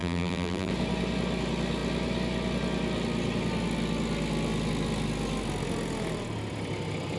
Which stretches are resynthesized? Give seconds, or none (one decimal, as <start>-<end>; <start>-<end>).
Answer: 0.0-0.7